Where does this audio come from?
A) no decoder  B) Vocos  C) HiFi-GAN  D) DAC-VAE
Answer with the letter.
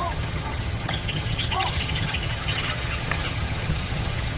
C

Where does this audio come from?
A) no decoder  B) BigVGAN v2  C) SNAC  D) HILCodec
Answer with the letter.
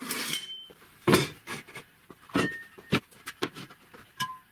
B